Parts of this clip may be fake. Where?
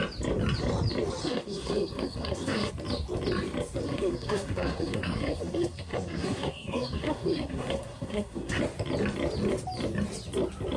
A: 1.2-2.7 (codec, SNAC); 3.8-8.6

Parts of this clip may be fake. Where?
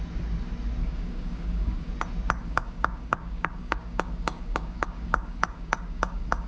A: 0.8-1.9 (codec, DAC); 2.4-6.5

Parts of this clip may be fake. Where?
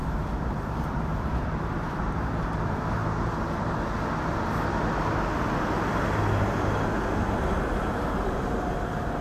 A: 0.0-3.0 (vocoder, BigVGAN v2); 7.8-9.2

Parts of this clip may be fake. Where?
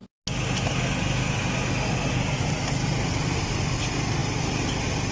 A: none